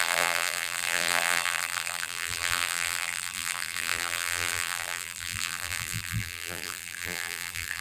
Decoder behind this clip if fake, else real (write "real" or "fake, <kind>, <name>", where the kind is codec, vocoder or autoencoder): fake, vocoder, BigVGAN v2